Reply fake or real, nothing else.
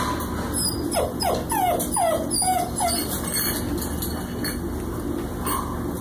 real